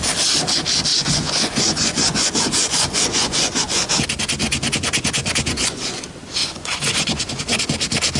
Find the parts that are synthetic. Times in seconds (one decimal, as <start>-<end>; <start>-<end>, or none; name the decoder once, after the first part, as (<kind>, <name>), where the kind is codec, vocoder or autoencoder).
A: 0.9-3.9 (vocoder, Vocos); 4.4-6.0; 6.4-7.6

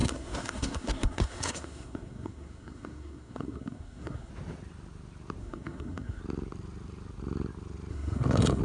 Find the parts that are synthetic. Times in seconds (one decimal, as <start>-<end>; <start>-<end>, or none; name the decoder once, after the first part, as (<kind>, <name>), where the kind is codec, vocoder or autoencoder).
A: 0.0-4.3 (codec, SNAC); 5.4-6.2; 7.9-8.6

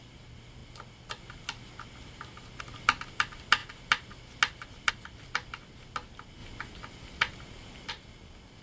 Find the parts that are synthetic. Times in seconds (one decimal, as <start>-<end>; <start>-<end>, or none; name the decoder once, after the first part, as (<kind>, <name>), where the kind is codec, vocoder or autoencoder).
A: none